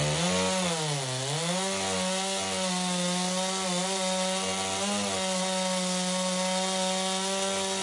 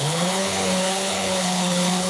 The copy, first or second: second